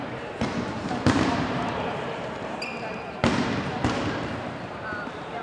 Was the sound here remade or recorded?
remade